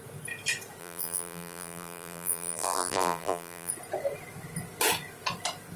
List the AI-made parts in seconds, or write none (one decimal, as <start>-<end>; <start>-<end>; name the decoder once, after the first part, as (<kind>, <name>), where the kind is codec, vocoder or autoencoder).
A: 0.8-3.7 (vocoder, BigVGAN v2)